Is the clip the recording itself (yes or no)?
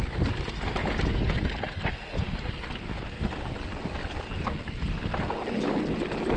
yes